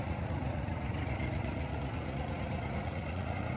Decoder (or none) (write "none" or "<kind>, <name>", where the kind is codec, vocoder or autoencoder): vocoder, Vocos